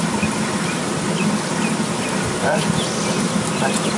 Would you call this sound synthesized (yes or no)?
no